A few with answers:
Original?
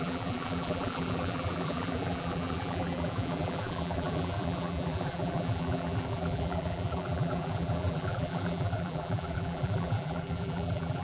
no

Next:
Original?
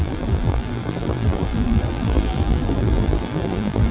no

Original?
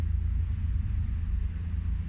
yes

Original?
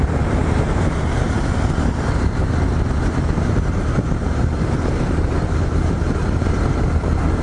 no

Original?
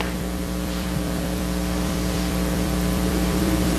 no